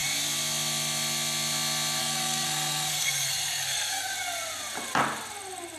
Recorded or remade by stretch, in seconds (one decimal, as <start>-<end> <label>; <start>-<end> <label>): 0.0-2.0 recorded; 2.0-4.1 remade; 4.1-5.8 recorded